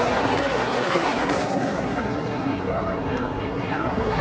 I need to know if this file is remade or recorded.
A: remade